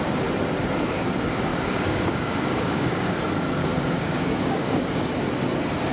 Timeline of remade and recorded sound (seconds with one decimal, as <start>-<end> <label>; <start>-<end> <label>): 0.0-1.5 recorded; 1.5-3.1 remade; 3.1-3.6 recorded; 3.6-5.1 remade; 5.1-5.9 recorded